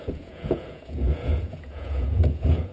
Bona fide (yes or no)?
no